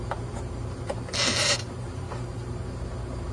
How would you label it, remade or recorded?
remade